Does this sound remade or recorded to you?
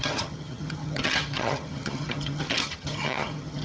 remade